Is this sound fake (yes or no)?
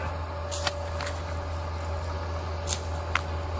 no